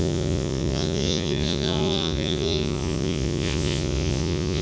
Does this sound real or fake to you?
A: fake